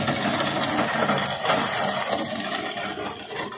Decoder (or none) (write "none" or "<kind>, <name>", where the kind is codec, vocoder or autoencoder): none